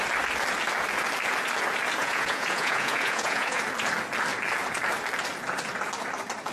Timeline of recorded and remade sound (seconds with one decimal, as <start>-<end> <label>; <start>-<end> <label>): 0.0-2.0 recorded; 2.0-3.6 remade; 3.6-6.5 recorded